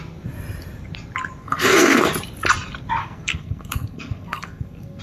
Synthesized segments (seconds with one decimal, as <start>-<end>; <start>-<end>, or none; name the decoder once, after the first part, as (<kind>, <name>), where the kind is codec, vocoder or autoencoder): 1.4-2.1 (codec, SNAC); 3.0-5.0